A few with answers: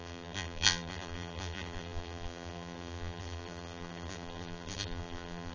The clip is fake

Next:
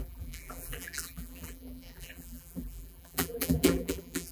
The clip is fake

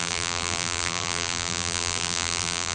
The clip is fake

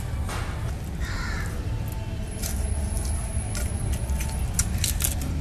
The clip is real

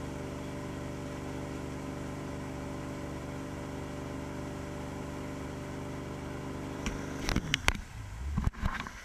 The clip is real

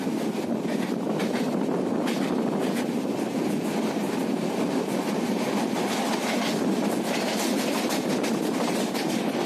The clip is real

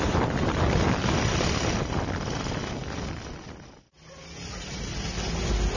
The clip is real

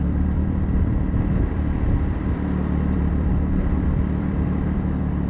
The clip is fake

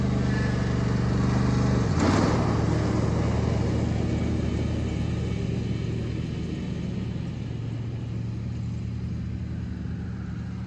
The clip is real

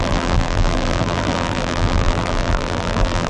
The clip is fake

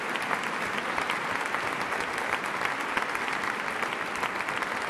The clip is real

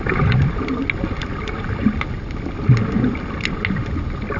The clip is real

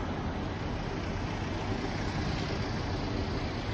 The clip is real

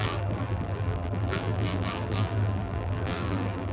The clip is fake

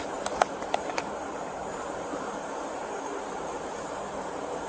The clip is fake